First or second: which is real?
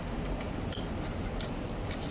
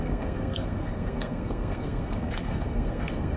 first